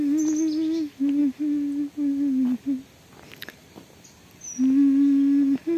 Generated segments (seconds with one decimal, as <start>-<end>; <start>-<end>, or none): none